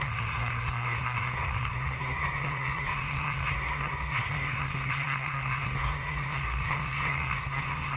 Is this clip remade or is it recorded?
remade